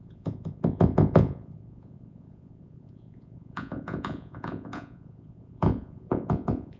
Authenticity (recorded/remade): remade